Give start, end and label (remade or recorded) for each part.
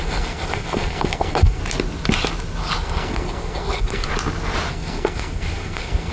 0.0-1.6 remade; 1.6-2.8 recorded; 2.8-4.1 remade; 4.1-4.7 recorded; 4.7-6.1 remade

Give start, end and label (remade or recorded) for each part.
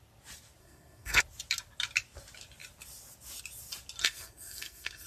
0.0-0.6 recorded; 0.6-1.2 remade; 1.2-4.0 recorded; 4.0-5.1 remade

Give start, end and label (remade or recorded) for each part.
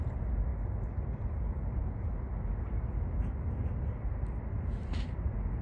0.0-5.6 recorded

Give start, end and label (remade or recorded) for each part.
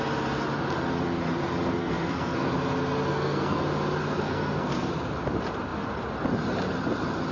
0.0-1.8 recorded; 1.8-2.5 remade; 2.5-3.1 recorded; 3.1-3.6 remade; 3.6-4.0 recorded; 4.0-4.9 remade; 4.9-7.3 recorded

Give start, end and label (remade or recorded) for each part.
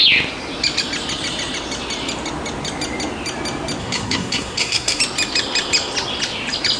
0.0-3.8 recorded; 3.8-5.0 remade; 5.0-6.8 recorded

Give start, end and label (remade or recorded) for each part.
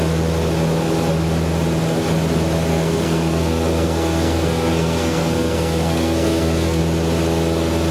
0.0-2.7 recorded; 2.7-6.8 remade; 6.8-7.9 recorded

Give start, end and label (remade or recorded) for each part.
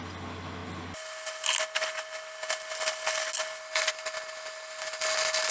0.0-5.5 recorded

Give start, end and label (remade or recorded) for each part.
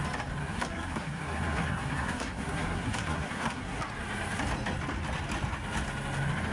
0.0-0.4 recorded; 0.4-3.8 remade; 3.8-6.5 recorded